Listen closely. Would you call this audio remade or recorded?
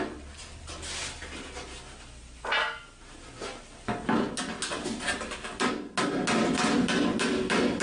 recorded